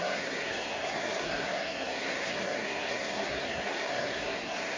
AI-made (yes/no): yes